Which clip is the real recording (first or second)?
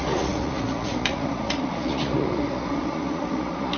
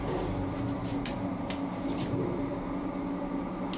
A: second